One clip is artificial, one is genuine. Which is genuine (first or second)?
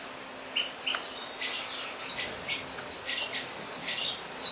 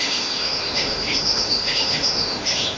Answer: first